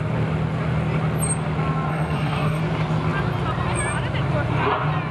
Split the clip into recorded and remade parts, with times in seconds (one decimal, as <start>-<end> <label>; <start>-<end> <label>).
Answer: 0.0-1.9 recorded; 1.9-2.6 remade; 2.6-5.1 recorded